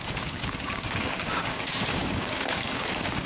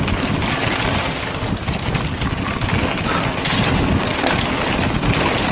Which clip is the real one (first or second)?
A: second